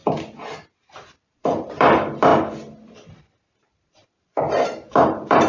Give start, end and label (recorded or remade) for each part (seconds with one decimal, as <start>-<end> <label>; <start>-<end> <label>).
0.0-1.3 recorded; 1.3-2.3 remade; 2.3-3.1 recorded; 3.1-5.5 remade